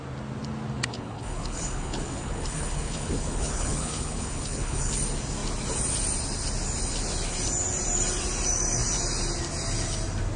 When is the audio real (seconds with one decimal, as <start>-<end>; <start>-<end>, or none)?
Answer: 0.0-0.9; 4.9-10.4